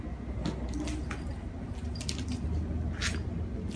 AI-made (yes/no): no